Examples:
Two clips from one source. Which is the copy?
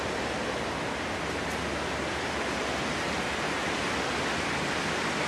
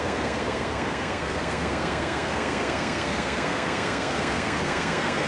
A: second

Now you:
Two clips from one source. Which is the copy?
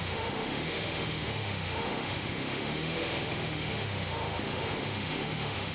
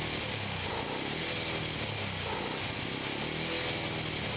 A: first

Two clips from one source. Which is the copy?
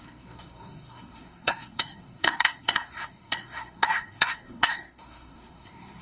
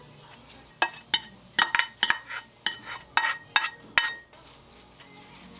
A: first